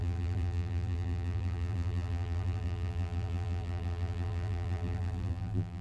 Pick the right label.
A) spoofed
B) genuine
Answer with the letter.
A